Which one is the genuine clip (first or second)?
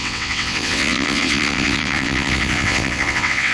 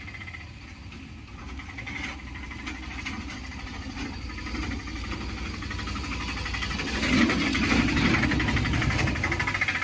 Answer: second